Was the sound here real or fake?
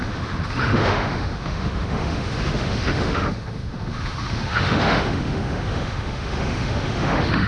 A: fake